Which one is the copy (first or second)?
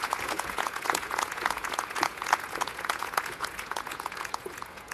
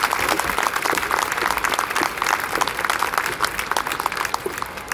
first